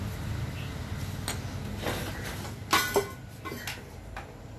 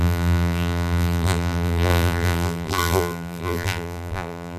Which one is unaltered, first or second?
first